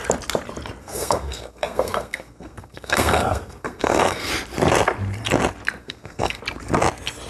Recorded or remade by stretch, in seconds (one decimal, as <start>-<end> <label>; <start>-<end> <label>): 0.0-0.8 recorded; 0.8-4.3 remade; 4.3-5.8 recorded; 5.8-6.4 remade; 6.4-7.3 recorded